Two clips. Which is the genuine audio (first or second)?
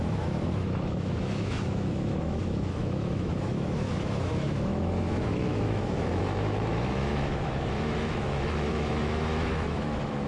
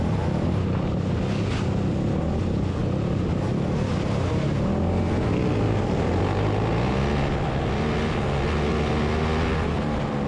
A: second